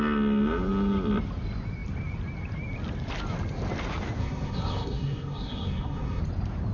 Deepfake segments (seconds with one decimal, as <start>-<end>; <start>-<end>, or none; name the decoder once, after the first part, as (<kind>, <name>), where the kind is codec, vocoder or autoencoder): 4.2-6.2 (codec, SNAC)